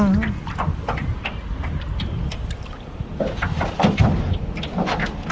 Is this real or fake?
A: real